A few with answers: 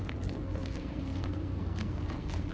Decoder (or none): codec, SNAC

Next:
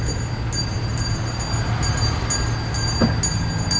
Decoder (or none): none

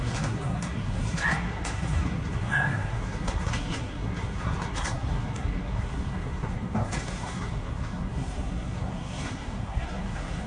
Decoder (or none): codec, SNAC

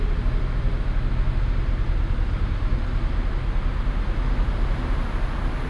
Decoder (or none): none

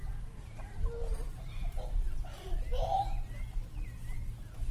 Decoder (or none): none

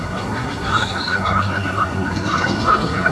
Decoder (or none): codec, SNAC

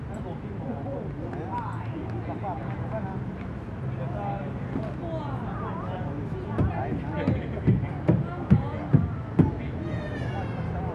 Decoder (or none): none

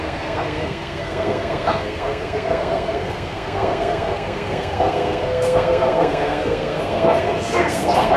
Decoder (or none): codec, SNAC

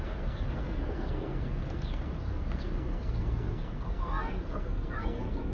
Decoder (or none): codec, SNAC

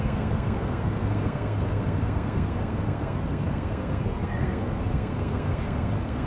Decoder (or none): codec, SNAC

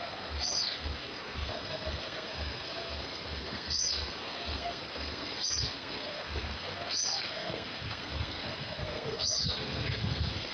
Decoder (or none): codec, SNAC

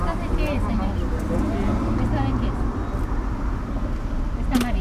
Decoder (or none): none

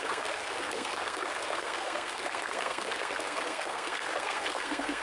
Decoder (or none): codec, SNAC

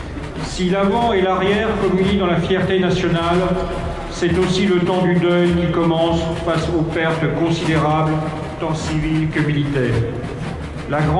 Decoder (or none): none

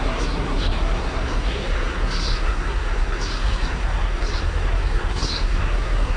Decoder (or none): codec, SNAC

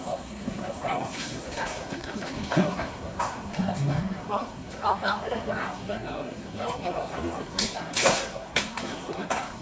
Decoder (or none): codec, SNAC